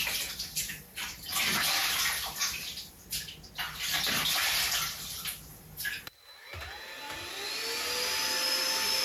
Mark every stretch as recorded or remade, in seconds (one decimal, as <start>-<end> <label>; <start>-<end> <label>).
0.0-9.0 recorded